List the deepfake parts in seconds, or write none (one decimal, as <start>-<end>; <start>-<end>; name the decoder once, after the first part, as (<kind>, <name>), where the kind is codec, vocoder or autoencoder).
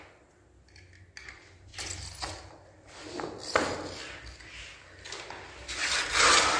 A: none